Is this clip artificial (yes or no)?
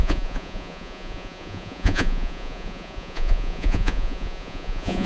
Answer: yes